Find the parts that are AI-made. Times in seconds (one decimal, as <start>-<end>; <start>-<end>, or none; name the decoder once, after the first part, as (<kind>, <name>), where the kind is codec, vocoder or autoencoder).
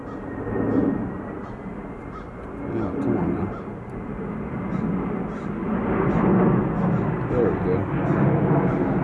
none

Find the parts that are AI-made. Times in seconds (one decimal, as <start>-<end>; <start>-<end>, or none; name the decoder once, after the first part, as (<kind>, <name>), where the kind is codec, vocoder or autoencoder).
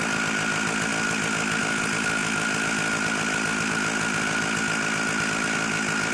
none